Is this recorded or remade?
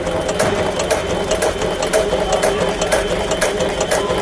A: recorded